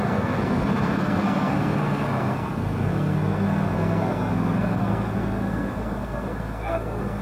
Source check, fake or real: fake